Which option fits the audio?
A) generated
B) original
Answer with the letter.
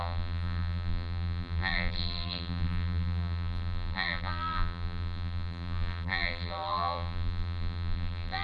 A